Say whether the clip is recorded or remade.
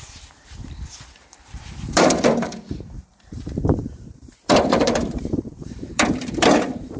remade